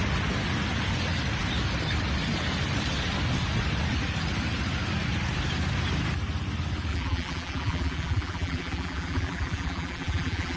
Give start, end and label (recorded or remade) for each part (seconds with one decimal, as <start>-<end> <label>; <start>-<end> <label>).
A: 0.0-6.9 recorded; 6.9-10.6 remade